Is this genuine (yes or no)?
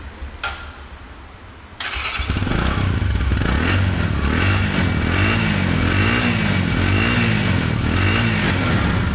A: yes